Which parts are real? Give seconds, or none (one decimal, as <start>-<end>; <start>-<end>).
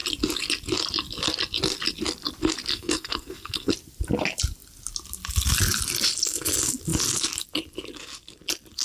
0.0-2.7; 3.7-8.8